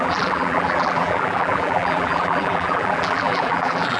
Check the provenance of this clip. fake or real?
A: fake